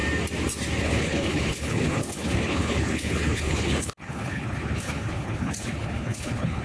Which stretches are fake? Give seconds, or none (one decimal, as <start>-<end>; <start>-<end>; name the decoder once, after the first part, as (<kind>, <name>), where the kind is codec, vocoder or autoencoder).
0.8-6.6 (codec, HILCodec)